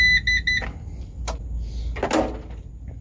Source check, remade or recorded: recorded